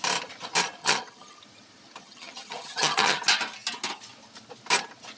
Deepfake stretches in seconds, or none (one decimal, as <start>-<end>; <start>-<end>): 0.8-1.4; 2.0-3.2